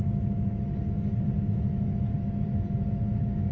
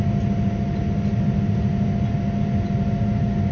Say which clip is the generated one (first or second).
first